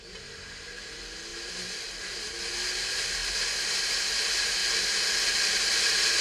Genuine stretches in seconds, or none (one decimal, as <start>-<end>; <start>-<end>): 0.0-6.2

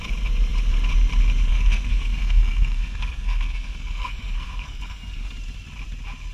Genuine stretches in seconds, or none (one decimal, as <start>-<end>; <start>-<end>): 0.0-1.5; 5.3-6.3

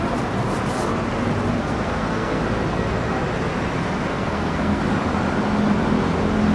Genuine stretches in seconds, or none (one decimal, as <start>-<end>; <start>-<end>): 0.0-1.6; 2.4-4.1; 4.8-6.5

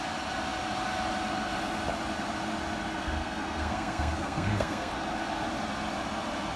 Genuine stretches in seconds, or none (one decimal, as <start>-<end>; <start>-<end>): 0.0-3.0; 4.9-6.6